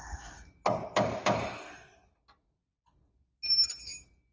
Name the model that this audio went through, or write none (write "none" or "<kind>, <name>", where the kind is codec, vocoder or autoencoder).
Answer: none